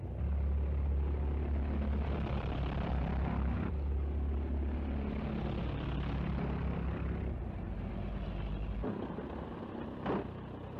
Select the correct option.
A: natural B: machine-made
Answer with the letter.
A